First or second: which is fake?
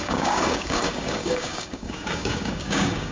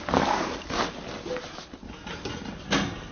first